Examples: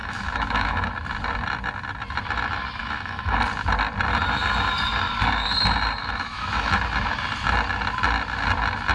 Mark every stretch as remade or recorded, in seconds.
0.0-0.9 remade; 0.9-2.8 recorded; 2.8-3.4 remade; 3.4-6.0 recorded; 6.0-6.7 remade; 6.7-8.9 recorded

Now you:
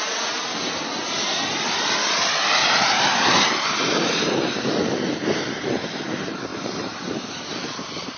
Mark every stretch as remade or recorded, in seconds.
0.0-1.2 recorded; 1.2-1.9 remade; 1.9-2.6 recorded; 2.6-4.6 remade; 4.6-6.5 recorded; 6.5-7.3 remade; 7.3-8.2 recorded

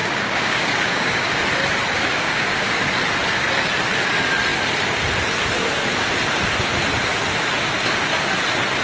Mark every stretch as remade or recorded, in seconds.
0.0-1.4 remade; 1.4-2.0 recorded; 2.0-2.8 remade; 2.8-8.8 recorded

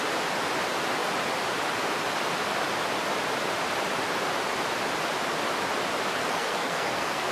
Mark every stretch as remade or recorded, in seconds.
0.0-6.2 recorded; 6.2-7.3 remade

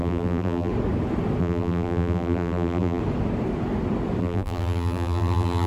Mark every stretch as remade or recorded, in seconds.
0.0-0.7 remade; 0.7-1.4 recorded; 1.4-3.0 remade; 3.0-4.2 recorded; 4.2-5.7 remade

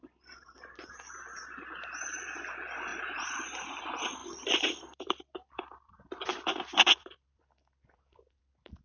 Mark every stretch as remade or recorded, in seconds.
0.0-2.9 recorded; 2.9-3.8 remade; 3.8-4.2 recorded; 4.2-8.8 remade

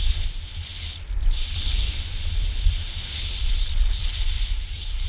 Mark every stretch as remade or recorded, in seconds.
0.0-5.1 remade